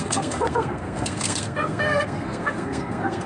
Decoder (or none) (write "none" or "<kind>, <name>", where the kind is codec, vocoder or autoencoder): codec, SNAC